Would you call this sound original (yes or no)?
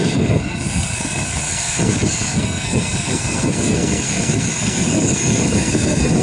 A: no